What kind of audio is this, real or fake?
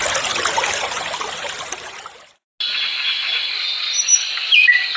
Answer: real